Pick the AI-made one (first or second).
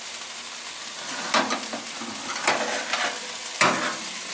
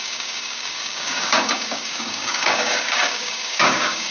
second